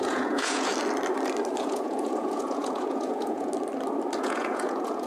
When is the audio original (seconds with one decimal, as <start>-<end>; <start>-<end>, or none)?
0.7-1.6; 3.5-4.2